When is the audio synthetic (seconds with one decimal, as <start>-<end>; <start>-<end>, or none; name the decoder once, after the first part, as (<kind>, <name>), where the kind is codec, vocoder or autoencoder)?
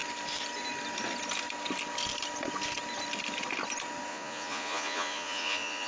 4.1-5.9 (vocoder, Vocos)